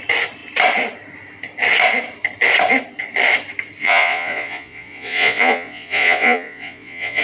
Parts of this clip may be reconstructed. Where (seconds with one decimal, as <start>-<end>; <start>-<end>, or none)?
3.8-7.2